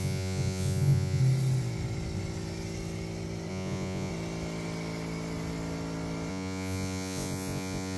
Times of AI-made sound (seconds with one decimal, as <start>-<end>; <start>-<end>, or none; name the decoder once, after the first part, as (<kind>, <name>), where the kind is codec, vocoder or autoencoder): 0.0-1.2 (vocoder, Vocos); 3.5-4.1; 6.3-8.0